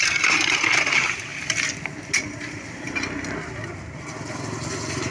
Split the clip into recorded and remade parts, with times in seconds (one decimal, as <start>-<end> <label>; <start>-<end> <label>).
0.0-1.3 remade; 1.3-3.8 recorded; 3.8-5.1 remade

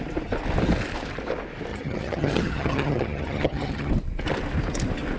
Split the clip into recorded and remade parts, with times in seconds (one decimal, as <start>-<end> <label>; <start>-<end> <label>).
0.0-1.7 recorded; 1.7-3.9 remade; 3.9-5.2 recorded

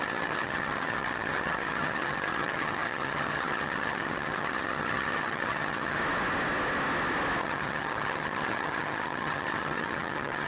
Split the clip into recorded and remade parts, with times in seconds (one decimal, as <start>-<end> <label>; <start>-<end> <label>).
0.0-6.0 remade; 6.0-7.4 recorded; 7.4-10.5 remade